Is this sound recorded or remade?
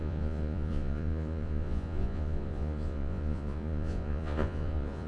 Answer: remade